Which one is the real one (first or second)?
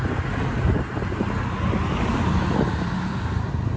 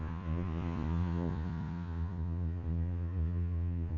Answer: first